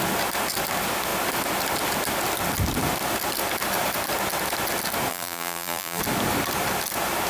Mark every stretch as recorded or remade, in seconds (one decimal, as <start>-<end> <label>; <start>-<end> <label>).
0.0-5.1 recorded; 5.1-6.0 remade; 6.0-7.3 recorded